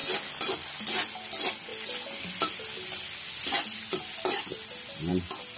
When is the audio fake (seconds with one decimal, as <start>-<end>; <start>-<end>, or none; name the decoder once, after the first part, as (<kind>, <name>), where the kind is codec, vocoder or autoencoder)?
none